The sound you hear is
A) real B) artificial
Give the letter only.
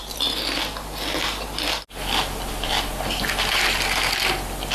A